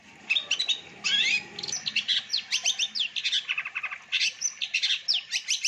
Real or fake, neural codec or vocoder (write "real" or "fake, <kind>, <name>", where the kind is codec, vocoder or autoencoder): real